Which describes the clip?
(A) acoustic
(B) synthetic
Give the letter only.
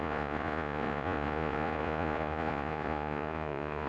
B